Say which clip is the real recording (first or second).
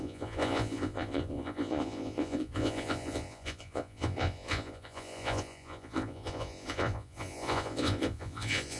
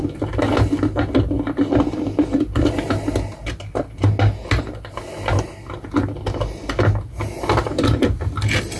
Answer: second